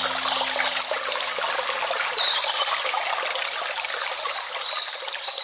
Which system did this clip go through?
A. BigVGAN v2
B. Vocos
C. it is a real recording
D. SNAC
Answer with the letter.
C